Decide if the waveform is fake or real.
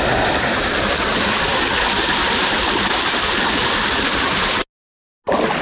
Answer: real